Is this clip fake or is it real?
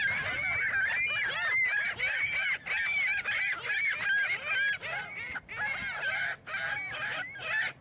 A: real